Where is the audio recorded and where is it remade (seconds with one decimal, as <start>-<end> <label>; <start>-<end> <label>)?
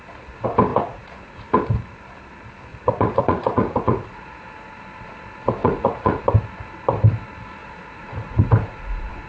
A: 0.0-0.7 recorded; 0.7-1.4 remade; 1.4-2.7 recorded; 2.7-4.5 remade; 4.5-5.6 recorded; 5.6-6.2 remade; 6.2-7.6 recorded; 7.6-9.3 remade